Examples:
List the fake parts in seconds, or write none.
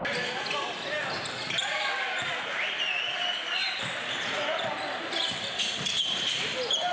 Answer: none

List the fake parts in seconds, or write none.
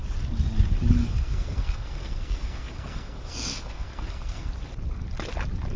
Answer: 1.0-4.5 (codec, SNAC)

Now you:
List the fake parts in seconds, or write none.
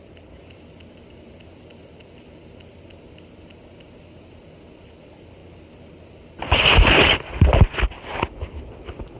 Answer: none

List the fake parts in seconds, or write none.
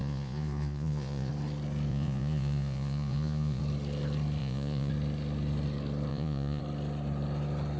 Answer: 0.0-1.3 (vocoder, Vocos); 1.9-3.6; 4.4-4.9; 6.1-6.6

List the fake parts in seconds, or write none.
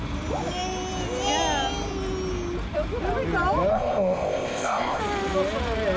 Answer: 3.7-5.0 (codec, ZipCodec)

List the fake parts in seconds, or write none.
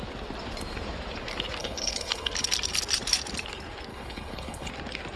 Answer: 1.6-2.3 (codec, HILCodec); 3.9-4.7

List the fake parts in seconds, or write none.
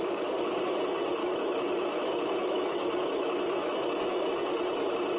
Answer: 1.2-4.3 (autoencoder, DAC-VAE)